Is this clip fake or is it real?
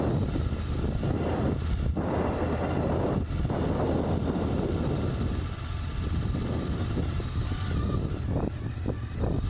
real